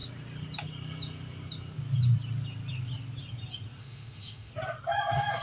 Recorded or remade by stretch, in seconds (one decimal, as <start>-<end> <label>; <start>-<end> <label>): 0.0-3.8 recorded; 3.8-4.5 remade; 4.5-5.4 recorded